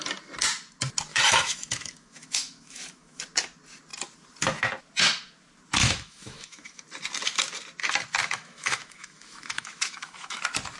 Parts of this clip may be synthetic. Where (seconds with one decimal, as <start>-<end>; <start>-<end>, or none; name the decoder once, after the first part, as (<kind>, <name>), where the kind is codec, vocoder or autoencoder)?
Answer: 1.1-3.2 (autoencoder, DAC-VAE); 5.8-6.8; 8.2-10.4